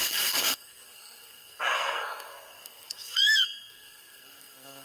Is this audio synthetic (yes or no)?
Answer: yes